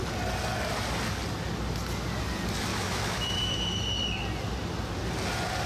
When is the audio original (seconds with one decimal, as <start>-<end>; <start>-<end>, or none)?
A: 0.0-2.7; 3.8-5.7

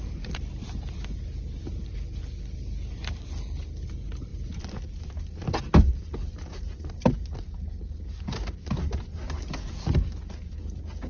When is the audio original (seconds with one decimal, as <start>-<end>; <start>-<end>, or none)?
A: 0.0-11.1

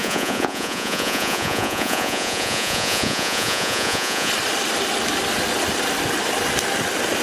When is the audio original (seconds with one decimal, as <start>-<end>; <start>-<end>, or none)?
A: 4.3-7.2